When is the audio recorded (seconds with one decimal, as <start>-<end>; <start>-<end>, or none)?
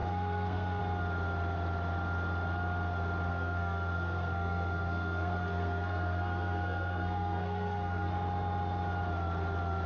0.8-3.3; 8.1-9.9